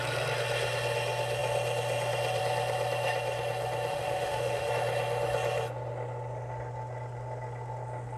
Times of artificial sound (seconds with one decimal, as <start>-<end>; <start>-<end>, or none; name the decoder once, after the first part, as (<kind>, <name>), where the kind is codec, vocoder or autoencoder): 3.9-4.7 (autoencoder, DAC-VAE)